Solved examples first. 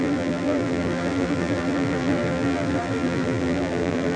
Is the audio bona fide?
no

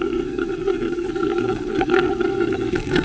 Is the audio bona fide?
no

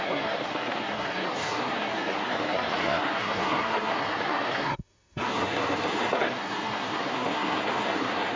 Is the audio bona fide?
no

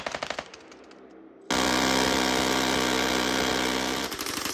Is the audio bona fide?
yes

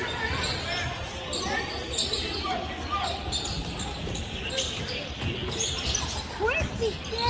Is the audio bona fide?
yes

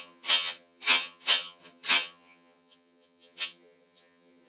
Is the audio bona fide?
no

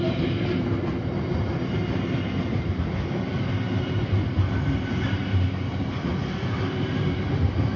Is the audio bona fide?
yes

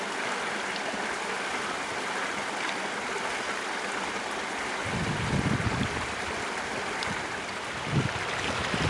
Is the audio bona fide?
yes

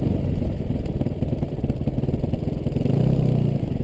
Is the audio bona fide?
yes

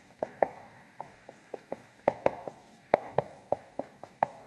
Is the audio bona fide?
no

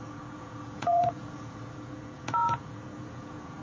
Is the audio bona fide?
no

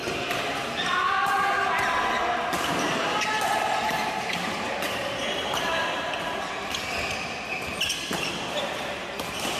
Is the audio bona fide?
yes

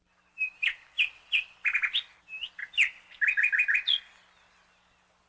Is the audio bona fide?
yes